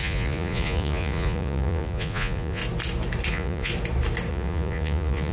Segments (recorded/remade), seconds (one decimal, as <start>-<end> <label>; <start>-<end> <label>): 0.0-2.6 remade; 2.6-3.3 recorded; 3.3-3.7 remade; 3.7-4.3 recorded; 4.3-5.3 remade